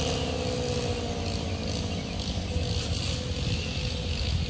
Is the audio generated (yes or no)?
no